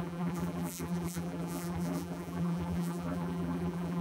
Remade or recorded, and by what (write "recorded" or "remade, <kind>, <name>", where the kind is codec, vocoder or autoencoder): remade, vocoder, BigVGAN v2